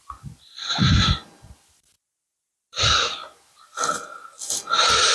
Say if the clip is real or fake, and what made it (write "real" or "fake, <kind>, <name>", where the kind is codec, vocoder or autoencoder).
real